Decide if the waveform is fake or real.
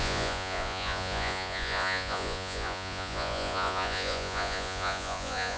fake